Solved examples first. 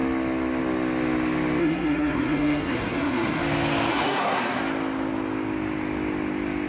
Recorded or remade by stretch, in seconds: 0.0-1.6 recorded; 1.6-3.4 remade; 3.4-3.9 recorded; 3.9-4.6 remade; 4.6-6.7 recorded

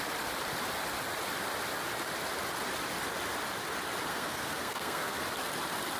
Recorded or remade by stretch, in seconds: 0.0-4.1 recorded; 4.1-5.2 remade; 5.2-6.0 recorded

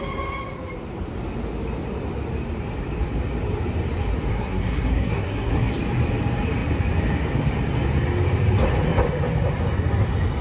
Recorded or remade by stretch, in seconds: 0.0-4.3 recorded; 4.3-5.7 remade; 5.7-10.4 recorded